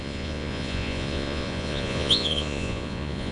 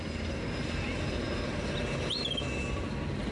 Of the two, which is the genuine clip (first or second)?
second